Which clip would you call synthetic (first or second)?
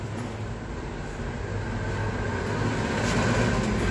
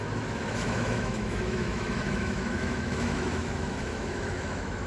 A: second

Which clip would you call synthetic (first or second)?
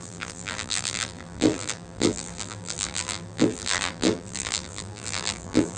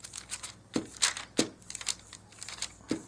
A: first